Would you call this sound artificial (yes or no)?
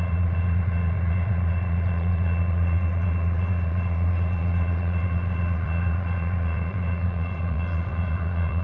yes